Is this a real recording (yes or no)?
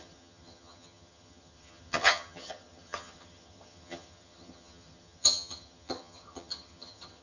no